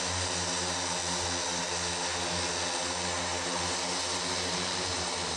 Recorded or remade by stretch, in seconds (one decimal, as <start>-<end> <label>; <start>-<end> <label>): 0.0-5.4 recorded